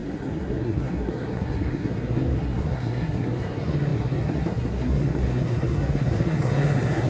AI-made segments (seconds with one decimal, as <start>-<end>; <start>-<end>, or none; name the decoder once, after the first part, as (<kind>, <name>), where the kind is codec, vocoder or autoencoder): 0.0-7.1 (codec, SNAC)